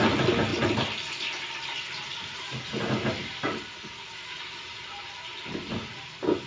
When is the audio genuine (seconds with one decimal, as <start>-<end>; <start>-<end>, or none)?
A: 0.0-6.5